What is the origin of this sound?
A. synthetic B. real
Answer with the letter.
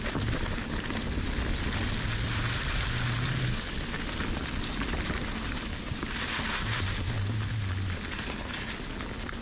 B